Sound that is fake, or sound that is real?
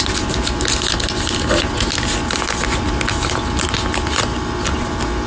real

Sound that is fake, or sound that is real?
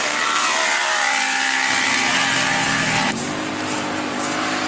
fake